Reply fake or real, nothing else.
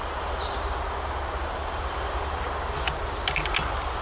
real